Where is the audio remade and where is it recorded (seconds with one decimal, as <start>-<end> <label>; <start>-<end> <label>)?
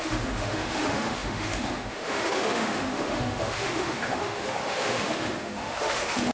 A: 0.0-6.3 remade